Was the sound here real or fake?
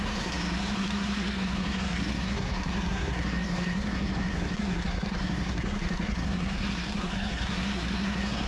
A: fake